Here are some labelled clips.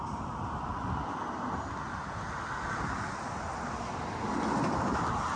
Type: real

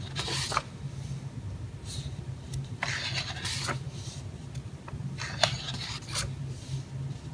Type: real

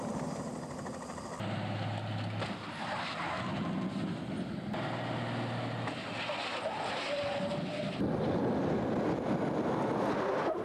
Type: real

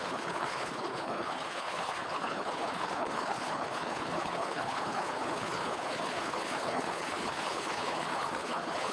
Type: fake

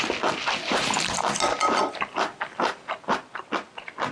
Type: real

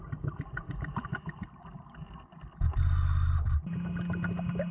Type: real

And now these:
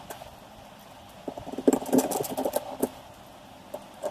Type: real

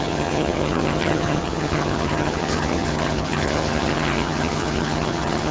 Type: fake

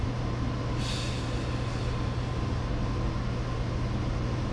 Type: real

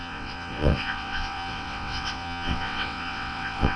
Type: fake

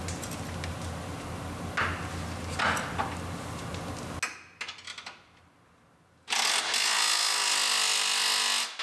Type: real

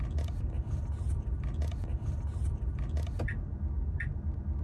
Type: real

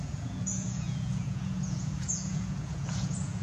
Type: fake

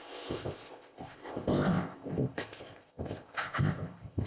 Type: fake